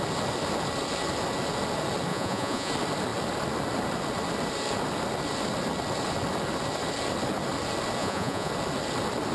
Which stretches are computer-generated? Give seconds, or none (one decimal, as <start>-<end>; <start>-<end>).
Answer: 2.1-2.7; 8.0-8.5

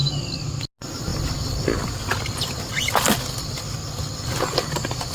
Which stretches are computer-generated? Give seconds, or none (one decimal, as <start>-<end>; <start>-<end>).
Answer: none

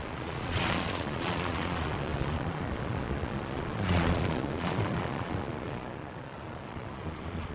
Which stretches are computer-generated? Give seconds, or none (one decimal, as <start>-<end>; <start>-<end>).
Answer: 0.0-7.5

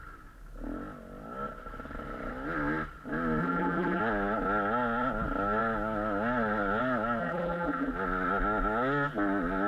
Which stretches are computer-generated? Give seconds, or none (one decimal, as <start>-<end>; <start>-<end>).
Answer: 3.4-4.0; 7.2-7.9

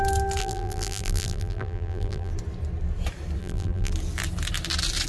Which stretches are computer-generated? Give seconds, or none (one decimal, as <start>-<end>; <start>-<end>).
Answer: 0.4-2.3; 3.4-3.9

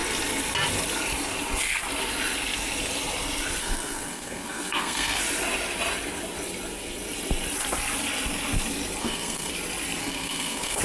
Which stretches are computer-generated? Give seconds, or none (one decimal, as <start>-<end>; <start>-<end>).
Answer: 3.6-5.2; 9.0-9.5; 10.0-10.8